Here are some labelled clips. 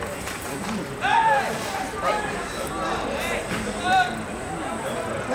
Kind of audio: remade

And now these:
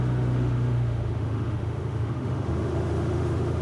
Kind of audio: remade